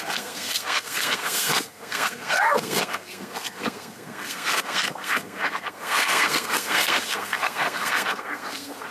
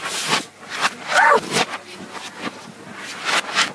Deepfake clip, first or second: first